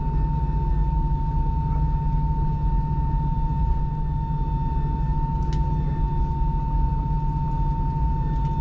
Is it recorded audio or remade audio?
recorded